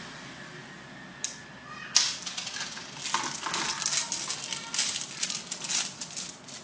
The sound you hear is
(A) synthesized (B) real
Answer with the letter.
B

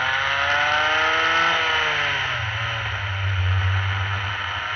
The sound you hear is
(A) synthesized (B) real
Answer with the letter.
B